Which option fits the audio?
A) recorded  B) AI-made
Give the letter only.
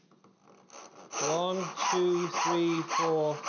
A